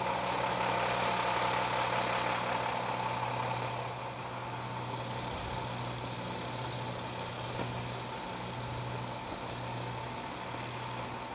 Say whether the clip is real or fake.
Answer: real